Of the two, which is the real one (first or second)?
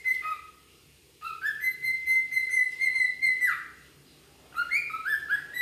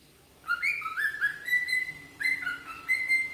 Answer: first